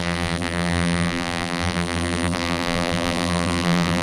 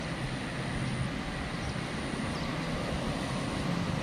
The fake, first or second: first